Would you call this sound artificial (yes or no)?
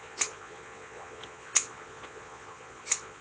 yes